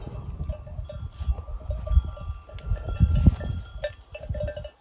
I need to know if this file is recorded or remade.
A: recorded